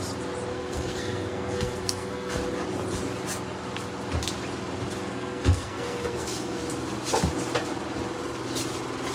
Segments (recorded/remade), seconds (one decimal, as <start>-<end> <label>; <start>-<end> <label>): 0.0-0.5 recorded; 0.5-2.4 remade; 2.4-5.0 recorded; 5.0-6.6 remade; 6.6-9.1 recorded